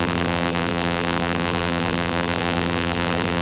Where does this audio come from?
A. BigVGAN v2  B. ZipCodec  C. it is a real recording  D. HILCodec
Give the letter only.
A